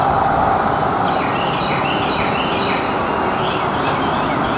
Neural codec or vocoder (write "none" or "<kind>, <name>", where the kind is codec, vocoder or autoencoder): none